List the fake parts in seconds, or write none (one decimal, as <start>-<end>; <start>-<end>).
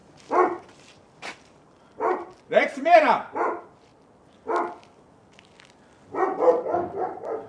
0.6-3.9; 7.1-7.5